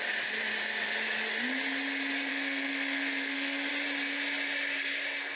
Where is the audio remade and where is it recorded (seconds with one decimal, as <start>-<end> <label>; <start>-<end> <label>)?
0.0-2.3 recorded; 2.3-3.7 remade; 3.7-5.4 recorded